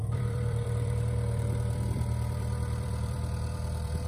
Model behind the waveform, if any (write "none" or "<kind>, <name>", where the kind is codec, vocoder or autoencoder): vocoder, BigVGAN v2